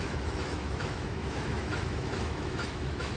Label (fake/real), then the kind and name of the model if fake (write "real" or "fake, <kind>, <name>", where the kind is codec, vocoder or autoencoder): fake, autoencoder, DAC-VAE